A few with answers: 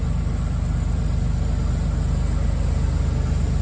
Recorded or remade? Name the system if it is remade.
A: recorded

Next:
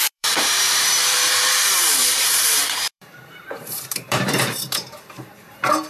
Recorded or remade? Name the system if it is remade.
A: remade, vocoder, BigVGAN v2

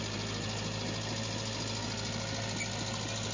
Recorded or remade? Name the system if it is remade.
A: recorded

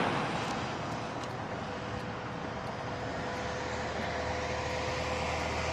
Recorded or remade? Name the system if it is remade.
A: recorded